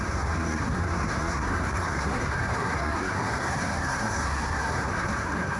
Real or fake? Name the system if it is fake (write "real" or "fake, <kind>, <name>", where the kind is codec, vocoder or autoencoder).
fake, codec, SNAC